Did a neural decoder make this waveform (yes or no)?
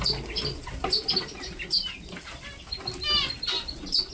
no